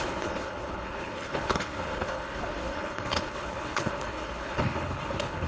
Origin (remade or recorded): remade